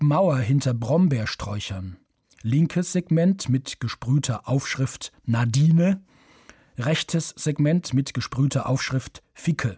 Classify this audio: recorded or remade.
recorded